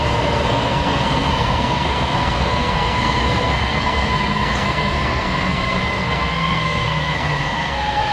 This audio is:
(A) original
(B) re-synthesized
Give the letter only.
B